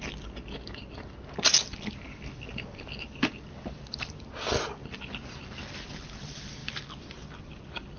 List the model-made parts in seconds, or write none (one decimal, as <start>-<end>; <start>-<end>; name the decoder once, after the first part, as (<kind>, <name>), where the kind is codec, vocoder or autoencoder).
none